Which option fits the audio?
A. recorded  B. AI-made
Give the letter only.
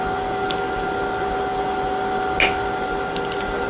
A